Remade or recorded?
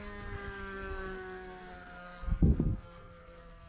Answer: remade